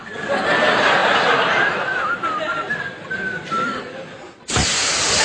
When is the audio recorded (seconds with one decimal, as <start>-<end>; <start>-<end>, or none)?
0.0-5.2